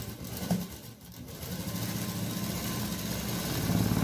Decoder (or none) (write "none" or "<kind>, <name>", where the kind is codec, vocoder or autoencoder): none